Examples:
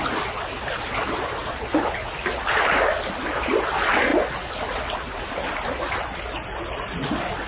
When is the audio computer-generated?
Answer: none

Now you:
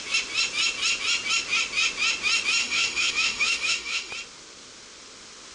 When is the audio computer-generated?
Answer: 2.6-4.1 (autoencoder, DAC-VAE)

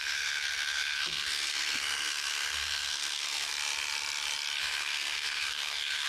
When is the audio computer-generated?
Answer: 0.0-3.5 (codec, SNAC); 4.6-6.1